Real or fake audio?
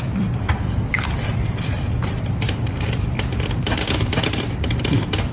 fake